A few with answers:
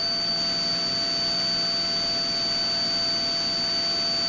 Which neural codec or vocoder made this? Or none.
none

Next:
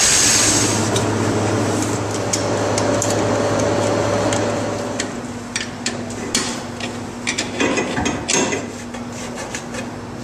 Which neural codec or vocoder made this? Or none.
none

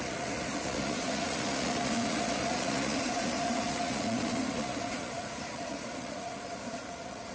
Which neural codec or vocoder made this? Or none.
vocoder, Vocos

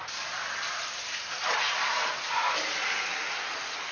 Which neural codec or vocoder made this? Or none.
none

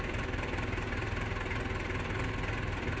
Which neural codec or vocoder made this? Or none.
none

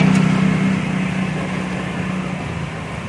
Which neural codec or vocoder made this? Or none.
none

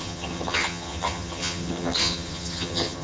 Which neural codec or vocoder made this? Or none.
vocoder, HiFi-GAN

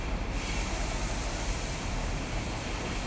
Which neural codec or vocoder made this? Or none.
vocoder, BigVGAN v2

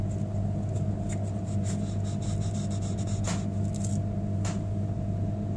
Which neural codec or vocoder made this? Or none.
none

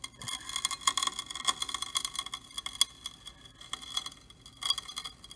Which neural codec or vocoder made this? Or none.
none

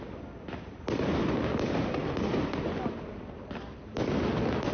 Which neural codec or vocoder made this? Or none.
none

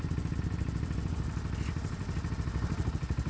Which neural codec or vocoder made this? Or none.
none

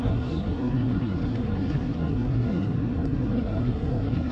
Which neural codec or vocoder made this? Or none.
codec, SNAC